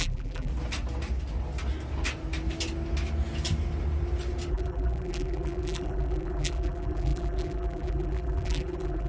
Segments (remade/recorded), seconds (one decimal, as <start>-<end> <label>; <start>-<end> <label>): 0.0-0.5 remade; 0.5-4.5 recorded; 4.5-9.1 remade